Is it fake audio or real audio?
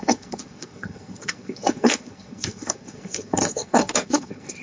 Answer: fake